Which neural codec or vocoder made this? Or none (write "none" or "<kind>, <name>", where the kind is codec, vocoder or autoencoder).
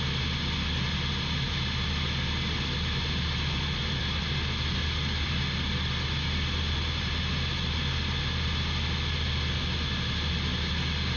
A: none